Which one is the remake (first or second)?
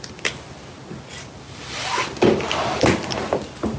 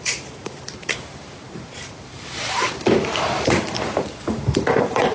second